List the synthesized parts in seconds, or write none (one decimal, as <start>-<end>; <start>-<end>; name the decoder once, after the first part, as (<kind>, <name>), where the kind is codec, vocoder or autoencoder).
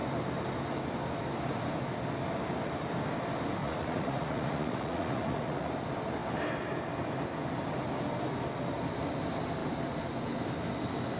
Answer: 3.6-5.7 (vocoder, Vocos)